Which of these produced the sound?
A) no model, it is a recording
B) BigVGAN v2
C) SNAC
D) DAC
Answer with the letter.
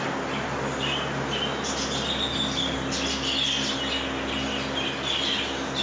A